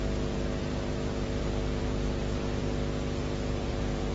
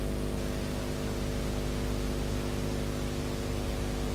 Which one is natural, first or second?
second